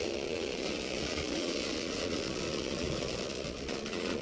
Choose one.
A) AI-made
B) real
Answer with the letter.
A